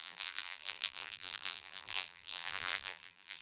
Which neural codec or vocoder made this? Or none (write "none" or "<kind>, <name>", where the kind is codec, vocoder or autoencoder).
vocoder, BigVGAN v2